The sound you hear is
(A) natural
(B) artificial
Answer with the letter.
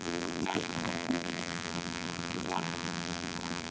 B